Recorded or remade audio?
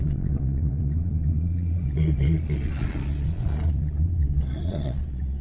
remade